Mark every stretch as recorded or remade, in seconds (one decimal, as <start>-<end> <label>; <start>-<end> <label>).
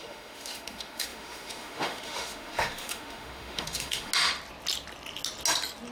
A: 0.0-4.1 remade; 4.1-5.9 recorded